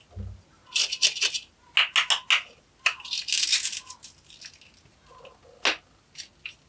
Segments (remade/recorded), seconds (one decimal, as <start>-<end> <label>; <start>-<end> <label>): 0.0-6.7 recorded